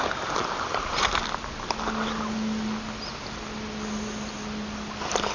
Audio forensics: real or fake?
real